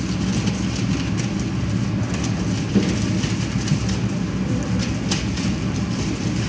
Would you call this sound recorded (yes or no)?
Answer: yes